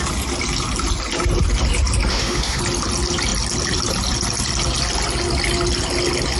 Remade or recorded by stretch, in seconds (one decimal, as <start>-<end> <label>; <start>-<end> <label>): 0.0-2.1 recorded; 2.1-2.6 remade; 2.6-6.4 recorded

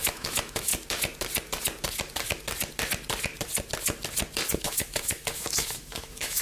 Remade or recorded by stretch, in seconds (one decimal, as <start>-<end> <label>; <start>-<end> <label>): 0.0-0.7 remade; 0.7-4.5 recorded; 4.5-6.4 remade

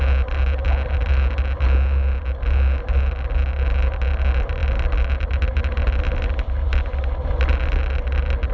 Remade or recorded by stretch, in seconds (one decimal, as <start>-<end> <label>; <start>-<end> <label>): 0.0-8.5 recorded

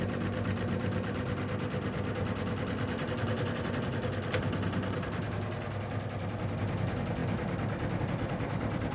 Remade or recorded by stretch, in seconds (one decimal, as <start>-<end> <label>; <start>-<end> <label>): 0.0-8.9 recorded

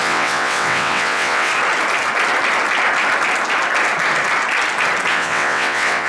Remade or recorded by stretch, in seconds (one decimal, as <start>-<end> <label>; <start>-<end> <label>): 0.0-1.5 remade; 1.5-5.1 recorded; 5.1-6.1 remade

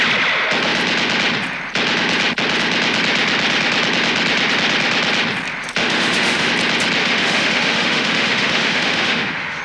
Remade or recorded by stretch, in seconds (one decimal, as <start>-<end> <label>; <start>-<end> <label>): 0.0-5.8 recorded; 5.8-6.5 remade; 6.5-7.0 recorded; 7.0-9.6 remade

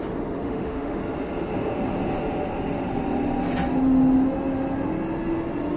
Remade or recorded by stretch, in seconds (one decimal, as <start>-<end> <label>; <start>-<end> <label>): 0.0-0.4 recorded; 0.4-1.0 remade; 1.0-5.8 recorded

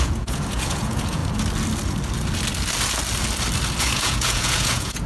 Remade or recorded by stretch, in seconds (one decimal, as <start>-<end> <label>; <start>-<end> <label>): 0.0-1.2 remade; 1.2-3.8 recorded; 3.8-5.1 remade